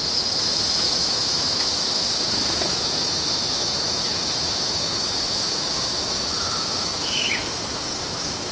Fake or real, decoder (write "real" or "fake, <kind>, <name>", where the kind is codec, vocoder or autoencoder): fake, autoencoder, DAC-VAE